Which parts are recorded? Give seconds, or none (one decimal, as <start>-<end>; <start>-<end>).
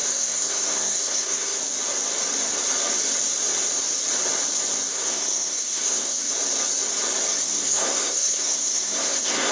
1.6-4.9; 6.3-7.4